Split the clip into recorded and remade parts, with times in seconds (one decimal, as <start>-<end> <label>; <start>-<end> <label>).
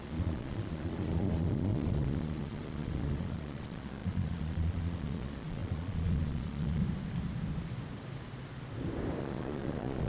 0.0-6.8 remade; 6.8-9.2 recorded; 9.2-10.1 remade